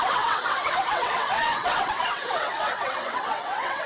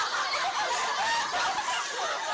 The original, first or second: second